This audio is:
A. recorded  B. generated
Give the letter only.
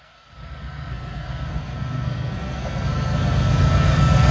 B